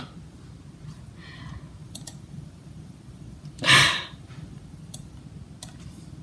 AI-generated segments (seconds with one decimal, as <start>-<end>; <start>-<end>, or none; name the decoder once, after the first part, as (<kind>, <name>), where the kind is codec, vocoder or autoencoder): 1.8-5.2 (vocoder, BigVGAN v2)